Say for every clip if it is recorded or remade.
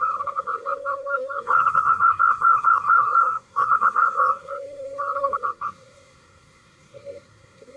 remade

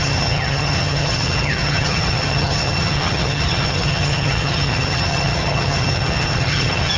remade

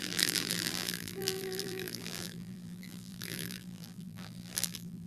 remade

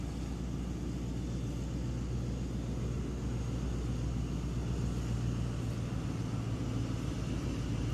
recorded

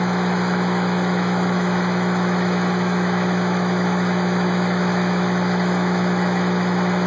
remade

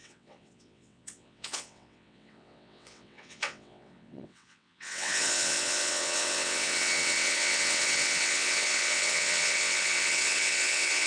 remade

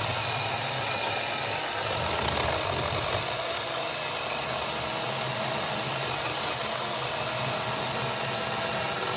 recorded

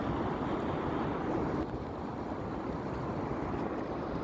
recorded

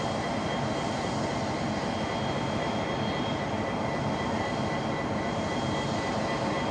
recorded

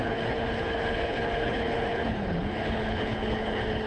remade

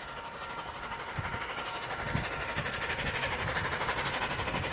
recorded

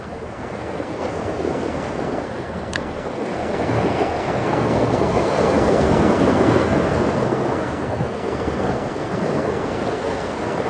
remade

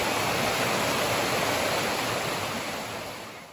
recorded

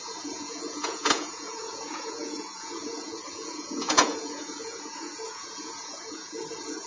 remade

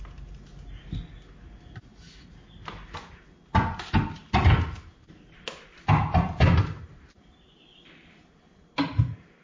recorded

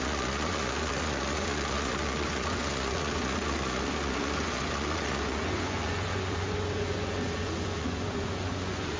remade